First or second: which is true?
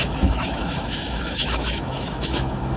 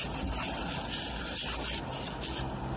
second